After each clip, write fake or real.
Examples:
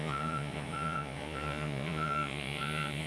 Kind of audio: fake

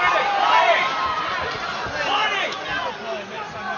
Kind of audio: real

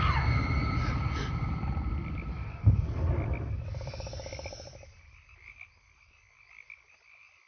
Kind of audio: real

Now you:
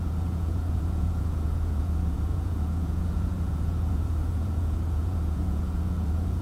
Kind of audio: fake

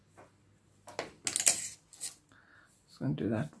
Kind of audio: real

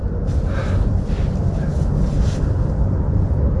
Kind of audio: real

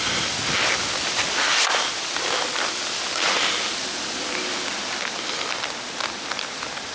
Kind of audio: real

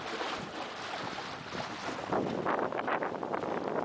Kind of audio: real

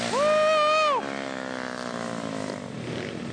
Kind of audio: real